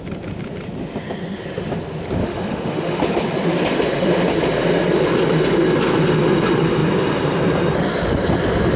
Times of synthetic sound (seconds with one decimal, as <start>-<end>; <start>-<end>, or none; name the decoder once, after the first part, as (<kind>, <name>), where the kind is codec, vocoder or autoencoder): 2.2-3.0 (autoencoder, DAC-VAE)